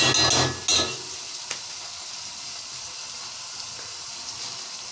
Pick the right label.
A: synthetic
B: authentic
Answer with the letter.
B